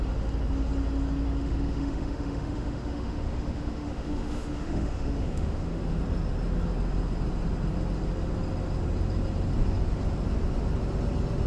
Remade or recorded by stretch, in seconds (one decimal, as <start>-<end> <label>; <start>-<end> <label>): 0.0-1.4 recorded; 1.4-6.0 remade; 6.0-11.5 recorded